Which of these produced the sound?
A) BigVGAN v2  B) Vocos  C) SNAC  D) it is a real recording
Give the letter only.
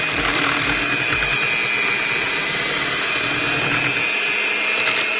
D